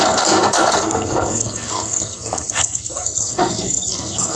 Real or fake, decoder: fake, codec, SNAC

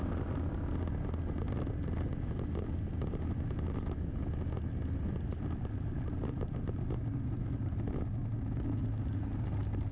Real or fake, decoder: real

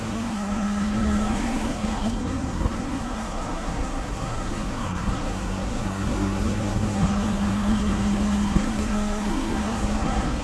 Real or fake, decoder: fake, codec, SNAC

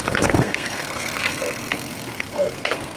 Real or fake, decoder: fake, codec, SNAC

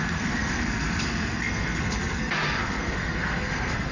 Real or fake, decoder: fake, codec, SNAC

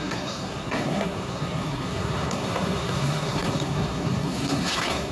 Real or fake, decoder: fake, codec, SNAC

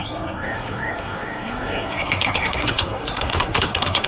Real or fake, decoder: fake, codec, SNAC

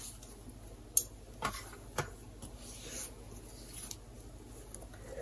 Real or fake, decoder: real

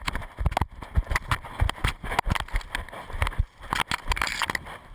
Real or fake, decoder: real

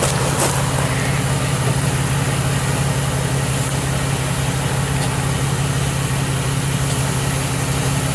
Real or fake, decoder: real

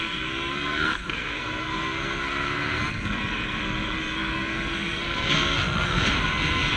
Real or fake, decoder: fake, codec, SNAC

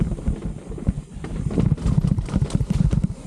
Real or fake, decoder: real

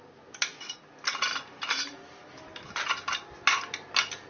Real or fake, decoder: real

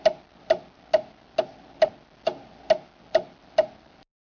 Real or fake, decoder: real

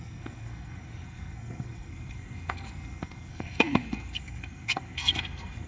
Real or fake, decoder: fake, codec, SNAC